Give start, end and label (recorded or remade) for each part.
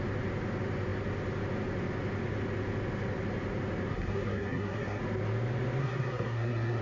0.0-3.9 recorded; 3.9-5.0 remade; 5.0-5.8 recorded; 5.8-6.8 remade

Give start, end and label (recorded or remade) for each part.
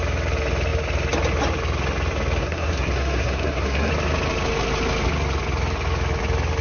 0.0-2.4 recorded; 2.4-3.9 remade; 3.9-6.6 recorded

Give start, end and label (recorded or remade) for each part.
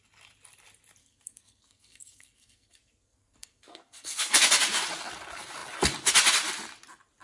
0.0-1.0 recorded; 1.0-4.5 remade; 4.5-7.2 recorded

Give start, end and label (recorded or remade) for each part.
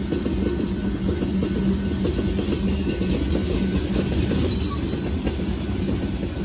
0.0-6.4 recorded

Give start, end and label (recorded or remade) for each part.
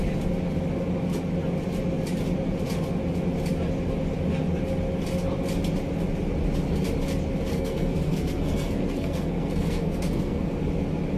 0.0-7.5 recorded; 7.5-10.6 remade; 10.6-11.2 recorded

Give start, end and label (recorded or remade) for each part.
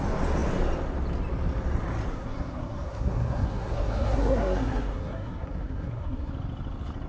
0.0-2.1 recorded; 2.1-6.3 remade; 6.3-7.1 recorded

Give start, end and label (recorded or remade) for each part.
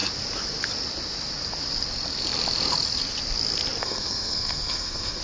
0.0-3.8 recorded; 3.8-5.2 remade